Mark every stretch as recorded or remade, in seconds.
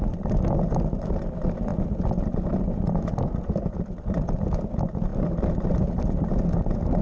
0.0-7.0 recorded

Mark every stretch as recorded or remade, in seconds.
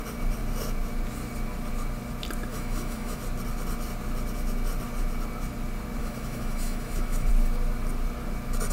0.0-2.5 recorded; 2.5-3.2 remade; 3.2-6.0 recorded; 6.0-7.3 remade; 7.3-8.7 recorded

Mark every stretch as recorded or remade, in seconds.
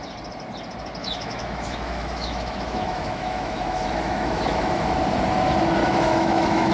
0.0-1.0 recorded; 1.0-5.0 remade; 5.0-5.8 recorded; 5.8-6.7 remade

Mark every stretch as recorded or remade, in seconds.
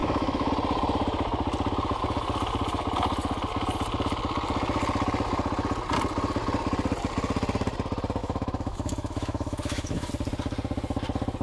0.0-0.5 remade; 0.5-8.2 recorded; 8.2-10.1 remade; 10.1-11.4 recorded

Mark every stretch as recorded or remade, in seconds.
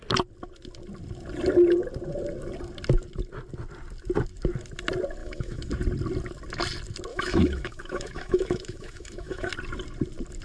0.0-5.2 recorded; 5.2-5.7 remade; 5.7-7.1 recorded; 7.1-9.5 remade; 9.5-10.4 recorded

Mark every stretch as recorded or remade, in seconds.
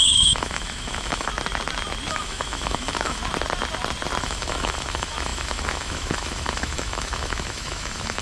0.0-1.3 remade; 1.3-2.1 recorded; 2.1-3.2 remade; 3.2-4.2 recorded; 4.2-8.2 remade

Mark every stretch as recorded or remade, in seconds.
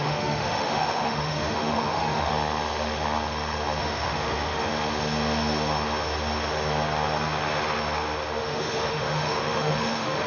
0.0-2.3 remade; 2.3-3.8 recorded; 3.8-4.7 remade; 4.7-8.4 recorded; 8.4-10.3 remade